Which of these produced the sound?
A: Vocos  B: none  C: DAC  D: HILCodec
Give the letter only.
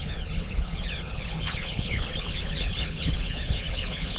D